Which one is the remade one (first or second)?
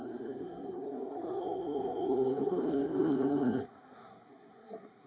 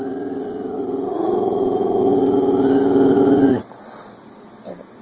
first